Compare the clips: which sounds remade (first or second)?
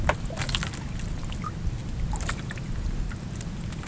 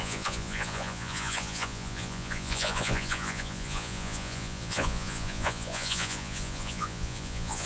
second